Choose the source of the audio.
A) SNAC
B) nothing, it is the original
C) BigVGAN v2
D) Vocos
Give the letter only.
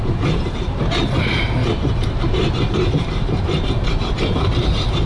C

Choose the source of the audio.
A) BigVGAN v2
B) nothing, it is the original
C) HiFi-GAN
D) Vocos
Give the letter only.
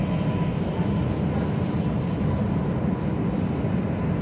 B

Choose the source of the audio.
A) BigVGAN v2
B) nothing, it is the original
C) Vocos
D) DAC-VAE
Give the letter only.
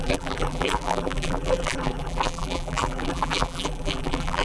A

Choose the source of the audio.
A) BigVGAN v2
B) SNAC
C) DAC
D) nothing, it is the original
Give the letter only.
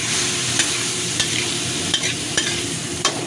A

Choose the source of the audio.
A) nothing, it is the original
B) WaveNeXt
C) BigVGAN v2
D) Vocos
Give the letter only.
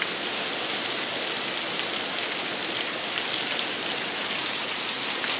A